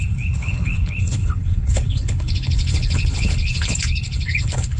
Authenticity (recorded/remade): remade